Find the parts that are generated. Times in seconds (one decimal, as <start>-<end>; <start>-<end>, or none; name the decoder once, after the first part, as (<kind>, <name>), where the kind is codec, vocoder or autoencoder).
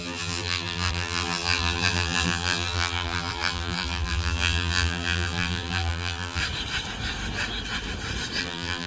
0.0-6.4 (vocoder, BigVGAN v2); 8.4-8.9